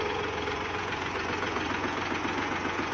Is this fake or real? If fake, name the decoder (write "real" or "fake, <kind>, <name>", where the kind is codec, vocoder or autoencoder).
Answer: fake, vocoder, Vocos